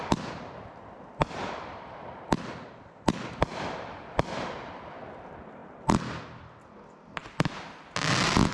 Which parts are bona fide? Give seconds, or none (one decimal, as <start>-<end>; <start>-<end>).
0.0-8.5